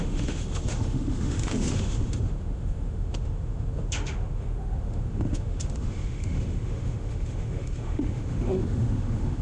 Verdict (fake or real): fake